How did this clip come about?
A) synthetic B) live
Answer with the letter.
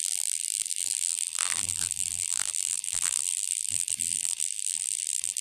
A